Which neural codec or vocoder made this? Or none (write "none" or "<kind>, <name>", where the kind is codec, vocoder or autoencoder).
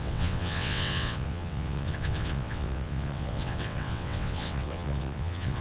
vocoder, WaveNeXt